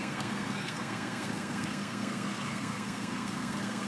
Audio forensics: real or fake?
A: fake